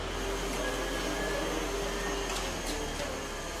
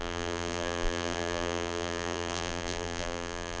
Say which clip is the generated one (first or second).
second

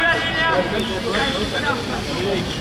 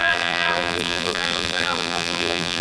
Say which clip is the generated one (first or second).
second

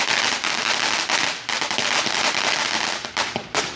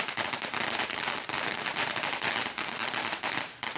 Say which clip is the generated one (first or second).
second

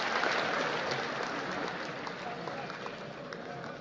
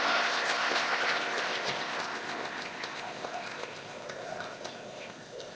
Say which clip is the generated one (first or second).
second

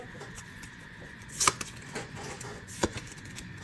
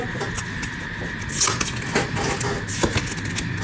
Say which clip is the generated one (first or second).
first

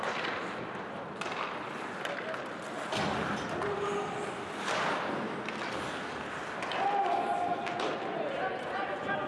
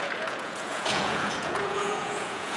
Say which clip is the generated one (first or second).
second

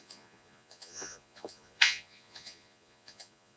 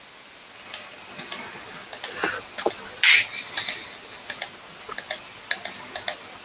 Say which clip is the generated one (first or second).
first